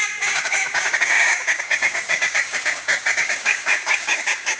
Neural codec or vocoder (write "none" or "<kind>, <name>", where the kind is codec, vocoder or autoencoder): codec, DAC